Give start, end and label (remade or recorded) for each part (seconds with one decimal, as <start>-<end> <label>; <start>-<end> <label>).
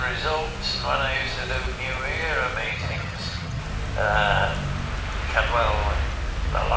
0.0-2.7 recorded; 2.7-3.6 remade; 3.6-6.8 recorded